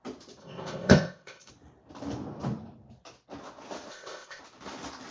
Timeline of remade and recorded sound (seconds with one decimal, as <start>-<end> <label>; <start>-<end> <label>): 0.0-0.4 recorded; 0.4-1.5 remade; 1.5-3.9 recorded; 3.9-4.4 remade; 4.4-5.1 recorded